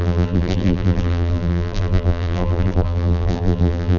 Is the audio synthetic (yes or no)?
yes